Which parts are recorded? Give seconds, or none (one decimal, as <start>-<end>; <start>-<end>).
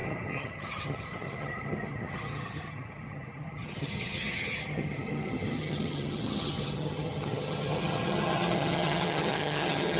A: none